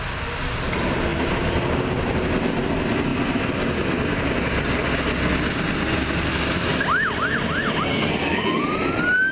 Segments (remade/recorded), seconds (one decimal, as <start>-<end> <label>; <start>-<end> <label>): 0.0-7.9 recorded; 7.9-8.6 remade; 8.6-9.3 recorded

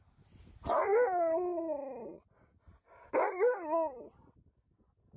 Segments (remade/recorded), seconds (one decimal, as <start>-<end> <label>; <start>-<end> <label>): 0.0-5.2 recorded